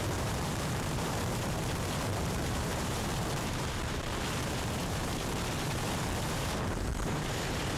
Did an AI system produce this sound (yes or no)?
yes